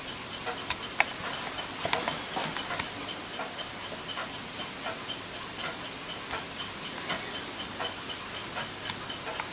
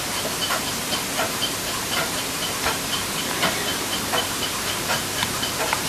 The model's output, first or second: second